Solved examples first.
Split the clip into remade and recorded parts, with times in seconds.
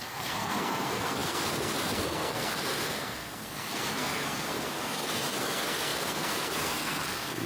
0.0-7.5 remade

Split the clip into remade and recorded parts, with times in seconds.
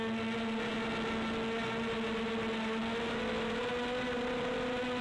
0.0-5.0 recorded